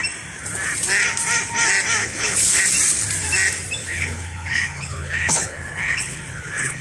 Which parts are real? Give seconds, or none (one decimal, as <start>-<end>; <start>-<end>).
0.0-2.0; 2.6-3.8